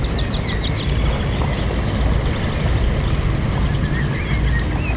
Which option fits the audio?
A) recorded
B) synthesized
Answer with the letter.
A